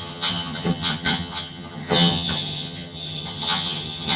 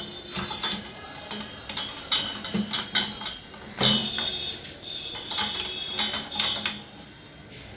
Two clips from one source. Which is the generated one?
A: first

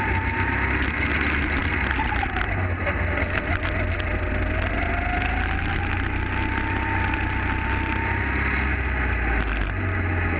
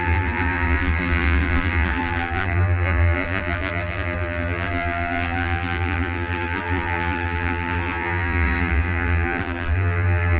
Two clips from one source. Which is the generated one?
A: second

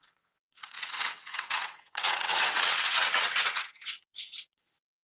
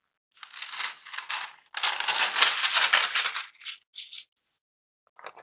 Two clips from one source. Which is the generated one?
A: first